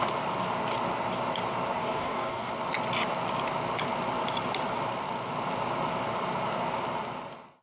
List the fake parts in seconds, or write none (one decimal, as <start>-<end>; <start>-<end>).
1.8-2.5

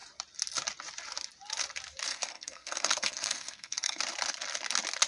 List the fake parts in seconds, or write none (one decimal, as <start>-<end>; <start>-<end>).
2.1-4.0

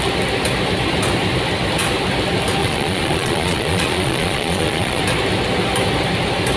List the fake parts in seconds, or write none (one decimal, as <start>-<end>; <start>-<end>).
2.6-5.0

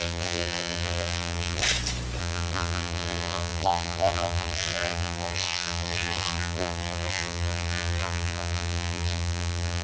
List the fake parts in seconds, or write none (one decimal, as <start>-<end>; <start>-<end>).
0.0-1.6; 2.2-9.8